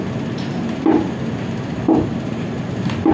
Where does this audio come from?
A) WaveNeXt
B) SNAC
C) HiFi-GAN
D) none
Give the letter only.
D